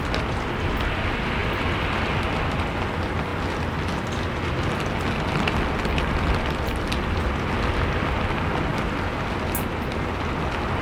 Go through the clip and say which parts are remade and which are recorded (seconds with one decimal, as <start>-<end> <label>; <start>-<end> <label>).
0.0-10.8 recorded